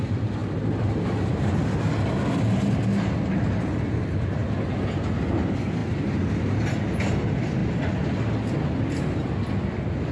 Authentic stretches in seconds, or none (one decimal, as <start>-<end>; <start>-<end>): 0.0-10.1